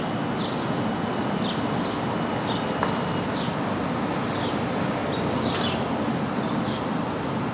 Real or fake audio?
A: real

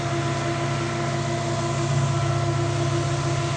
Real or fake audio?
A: real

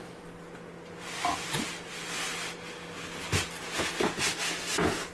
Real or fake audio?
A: real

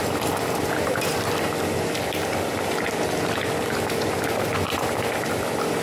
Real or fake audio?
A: fake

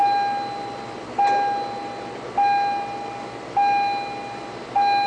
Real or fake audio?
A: real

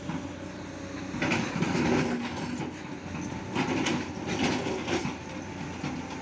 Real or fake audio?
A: real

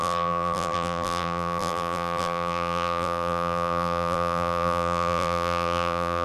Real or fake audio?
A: fake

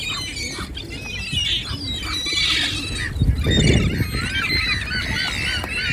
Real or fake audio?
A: real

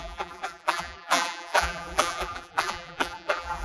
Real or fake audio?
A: fake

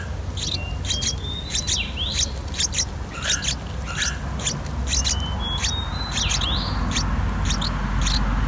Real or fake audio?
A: real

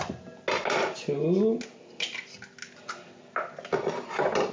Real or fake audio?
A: real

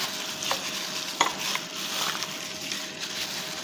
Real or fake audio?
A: real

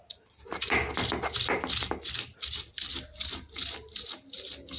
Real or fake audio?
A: fake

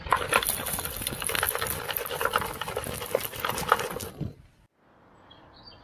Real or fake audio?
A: real